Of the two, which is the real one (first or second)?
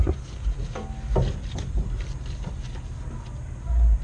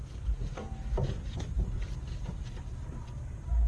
first